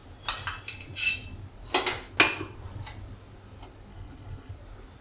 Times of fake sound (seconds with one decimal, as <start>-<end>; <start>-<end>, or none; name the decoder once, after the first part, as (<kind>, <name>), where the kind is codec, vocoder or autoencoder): 3.9-4.5 (codec, HILCodec)